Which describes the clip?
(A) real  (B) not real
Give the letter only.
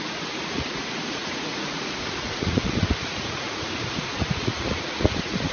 B